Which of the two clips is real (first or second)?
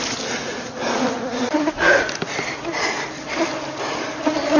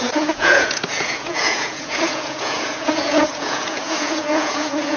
first